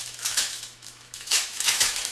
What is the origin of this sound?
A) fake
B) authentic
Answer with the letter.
A